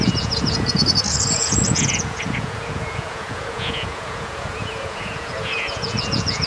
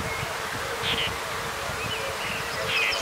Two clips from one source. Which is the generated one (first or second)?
first